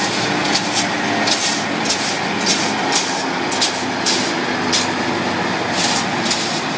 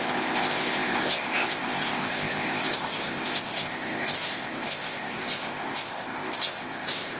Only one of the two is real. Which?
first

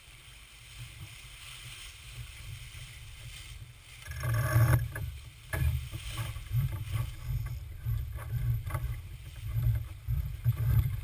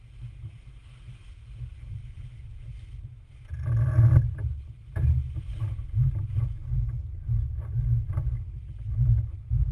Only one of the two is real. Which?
second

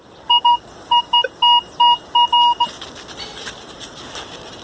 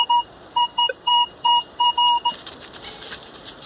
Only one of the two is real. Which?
first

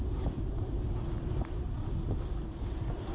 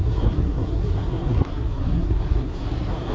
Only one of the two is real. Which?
first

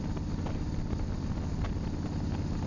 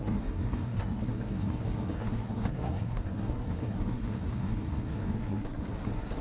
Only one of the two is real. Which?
first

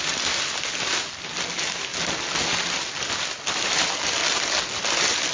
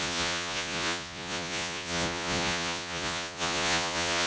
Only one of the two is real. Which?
first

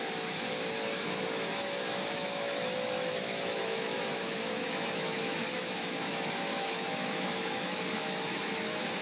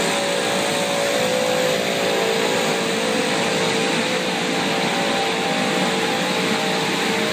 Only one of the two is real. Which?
second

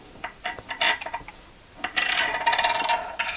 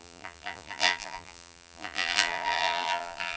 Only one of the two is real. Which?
first